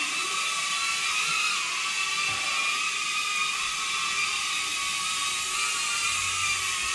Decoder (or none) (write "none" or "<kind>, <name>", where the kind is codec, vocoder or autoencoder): none